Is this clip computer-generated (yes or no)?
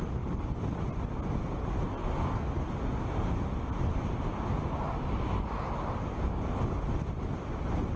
no